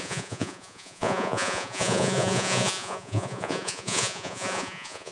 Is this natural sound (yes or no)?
no